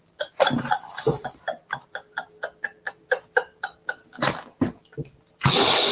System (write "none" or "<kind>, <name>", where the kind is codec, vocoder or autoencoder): none